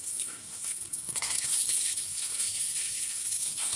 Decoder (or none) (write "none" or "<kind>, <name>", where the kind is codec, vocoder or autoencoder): codec, SNAC